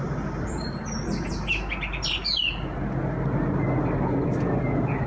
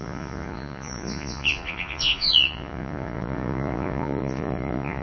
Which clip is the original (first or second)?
first